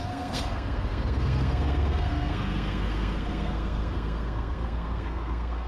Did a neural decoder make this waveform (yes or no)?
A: yes